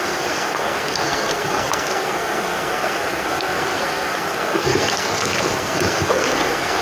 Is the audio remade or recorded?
remade